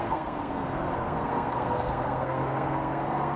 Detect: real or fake fake